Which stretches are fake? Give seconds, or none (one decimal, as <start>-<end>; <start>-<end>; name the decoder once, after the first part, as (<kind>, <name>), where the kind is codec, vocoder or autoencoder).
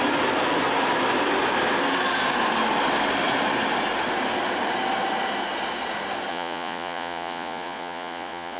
6.3-8.6 (vocoder, Vocos)